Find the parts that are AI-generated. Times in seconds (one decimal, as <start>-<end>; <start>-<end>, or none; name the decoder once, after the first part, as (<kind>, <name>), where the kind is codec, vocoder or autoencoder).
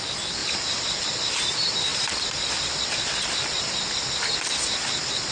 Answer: 0.0-5.3 (vocoder, BigVGAN v2)